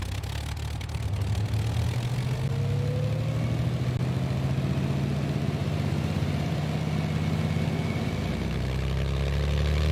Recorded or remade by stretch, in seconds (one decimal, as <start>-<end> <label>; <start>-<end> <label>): 0.0-5.6 recorded; 5.6-6.6 remade; 6.6-9.9 recorded